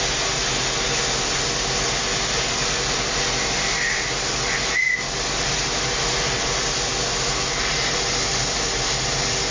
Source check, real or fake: real